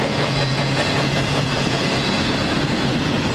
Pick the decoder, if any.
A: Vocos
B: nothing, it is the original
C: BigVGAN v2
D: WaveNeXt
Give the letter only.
A